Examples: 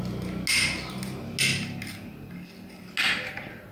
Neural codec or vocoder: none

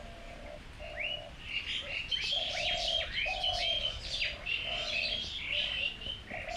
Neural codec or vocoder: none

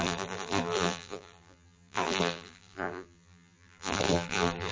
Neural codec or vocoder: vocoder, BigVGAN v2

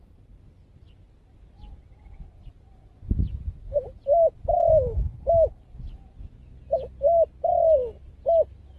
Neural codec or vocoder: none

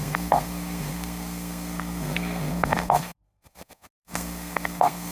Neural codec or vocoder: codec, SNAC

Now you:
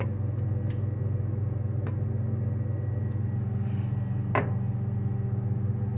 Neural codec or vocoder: none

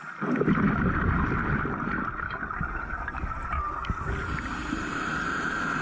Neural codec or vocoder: none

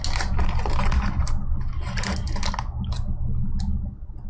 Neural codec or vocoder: none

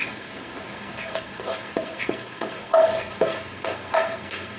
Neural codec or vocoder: codec, SNAC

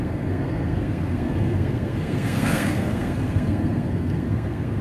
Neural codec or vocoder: codec, SNAC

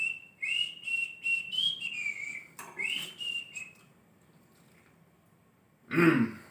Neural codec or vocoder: none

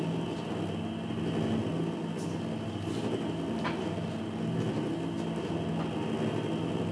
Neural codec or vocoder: none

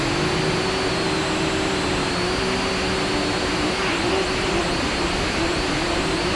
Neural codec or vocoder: none